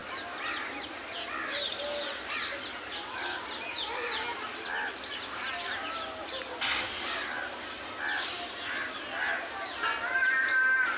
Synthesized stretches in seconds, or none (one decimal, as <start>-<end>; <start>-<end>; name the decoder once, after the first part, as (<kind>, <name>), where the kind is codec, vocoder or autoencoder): none